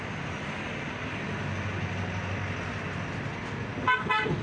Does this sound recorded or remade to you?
recorded